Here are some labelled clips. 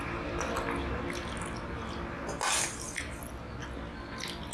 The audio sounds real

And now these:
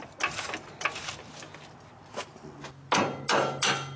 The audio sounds real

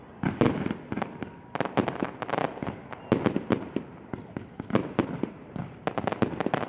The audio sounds real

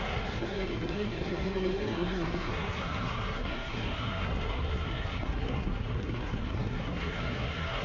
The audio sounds fake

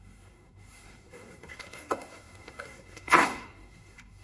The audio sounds fake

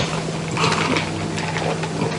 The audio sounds real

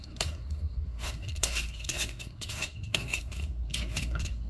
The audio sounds fake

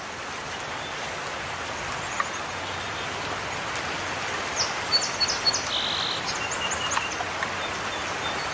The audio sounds real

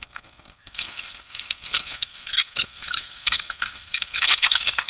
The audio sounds fake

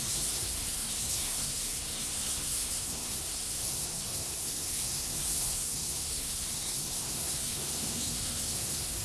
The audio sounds fake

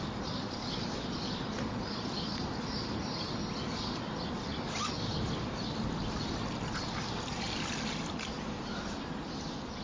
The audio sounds real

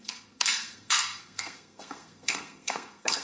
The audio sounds fake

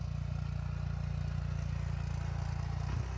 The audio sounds real